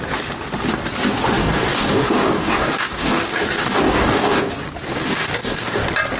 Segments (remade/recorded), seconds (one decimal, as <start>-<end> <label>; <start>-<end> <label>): 0.0-1.4 recorded; 1.4-4.5 remade; 4.5-4.9 recorded; 4.9-5.8 remade; 5.8-6.2 recorded